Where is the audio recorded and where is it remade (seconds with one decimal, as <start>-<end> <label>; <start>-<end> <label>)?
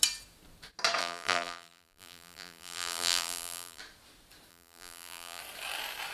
0.0-1.0 recorded; 1.0-3.8 remade; 3.8-4.5 recorded; 4.5-5.4 remade; 5.4-6.1 recorded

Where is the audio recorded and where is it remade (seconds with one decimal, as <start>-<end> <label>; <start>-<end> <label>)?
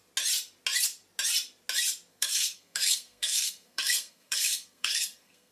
0.0-2.1 recorded; 2.1-5.5 remade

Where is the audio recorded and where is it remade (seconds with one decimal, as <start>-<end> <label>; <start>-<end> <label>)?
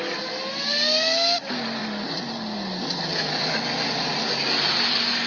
0.0-5.3 recorded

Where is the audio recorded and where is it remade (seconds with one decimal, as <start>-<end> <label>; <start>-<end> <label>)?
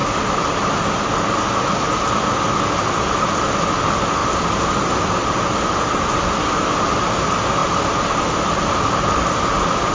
0.0-4.2 recorded; 4.2-5.9 remade; 5.9-9.9 recorded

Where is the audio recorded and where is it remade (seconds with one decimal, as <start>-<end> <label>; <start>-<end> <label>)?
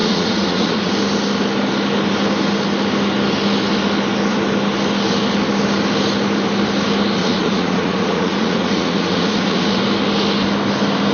0.0-0.9 remade; 0.9-7.2 recorded; 7.2-9.8 remade; 9.8-11.1 recorded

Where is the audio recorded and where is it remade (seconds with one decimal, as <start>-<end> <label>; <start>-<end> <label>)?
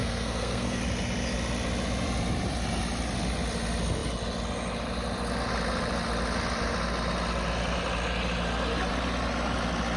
0.0-0.8 remade; 0.8-10.0 recorded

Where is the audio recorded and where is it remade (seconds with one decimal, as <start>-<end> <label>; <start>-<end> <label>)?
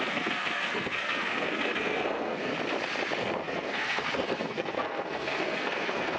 0.0-2.5 remade; 2.5-3.2 recorded; 3.2-6.2 remade